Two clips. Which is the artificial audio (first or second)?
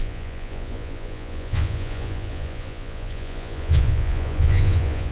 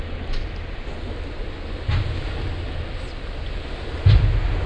first